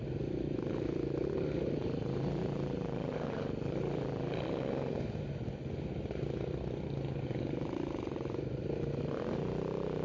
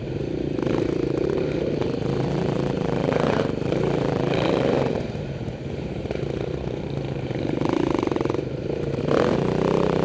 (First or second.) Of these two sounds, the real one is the first